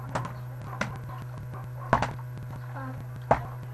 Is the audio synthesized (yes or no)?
no